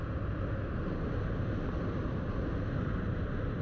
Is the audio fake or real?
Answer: real